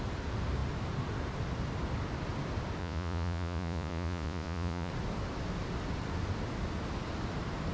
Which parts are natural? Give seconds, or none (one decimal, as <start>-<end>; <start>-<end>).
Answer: 0.0-2.8; 4.9-7.7